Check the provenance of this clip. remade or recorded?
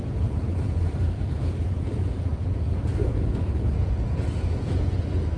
remade